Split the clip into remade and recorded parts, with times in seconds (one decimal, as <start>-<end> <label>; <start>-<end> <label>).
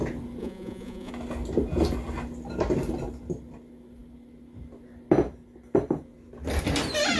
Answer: 0.0-0.4 recorded; 0.4-1.1 remade; 1.1-7.2 recorded